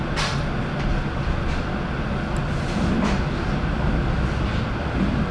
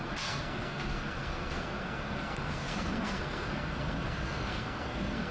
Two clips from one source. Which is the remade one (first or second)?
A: second